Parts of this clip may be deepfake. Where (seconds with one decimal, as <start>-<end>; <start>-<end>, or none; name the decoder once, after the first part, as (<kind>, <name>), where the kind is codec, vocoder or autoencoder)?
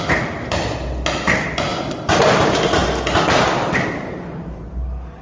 1.7-2.2 (vocoder, BigVGAN v2)